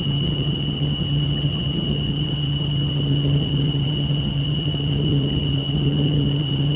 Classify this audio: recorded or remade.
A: remade